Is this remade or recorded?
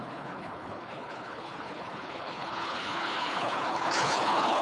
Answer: remade